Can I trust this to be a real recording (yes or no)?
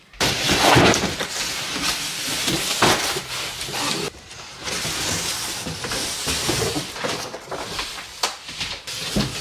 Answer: yes